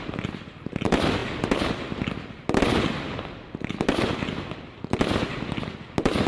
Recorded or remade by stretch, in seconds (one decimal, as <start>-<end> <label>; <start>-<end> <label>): 0.0-6.3 recorded